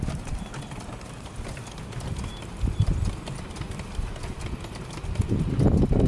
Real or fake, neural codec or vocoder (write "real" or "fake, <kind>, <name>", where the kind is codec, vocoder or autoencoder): real